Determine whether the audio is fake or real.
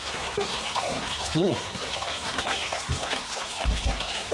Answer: fake